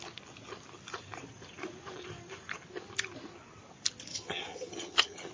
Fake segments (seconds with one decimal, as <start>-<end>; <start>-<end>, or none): 4.1-5.3

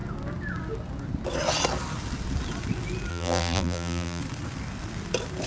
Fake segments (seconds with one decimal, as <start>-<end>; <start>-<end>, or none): 3.1-4.2

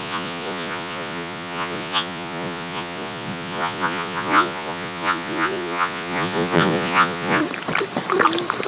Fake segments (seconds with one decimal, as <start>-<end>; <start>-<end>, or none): 0.0-7.4